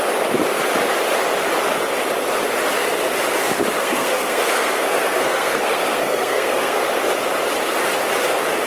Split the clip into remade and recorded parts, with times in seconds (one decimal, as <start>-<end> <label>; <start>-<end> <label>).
0.0-3.8 recorded; 3.8-6.8 remade; 6.8-8.7 recorded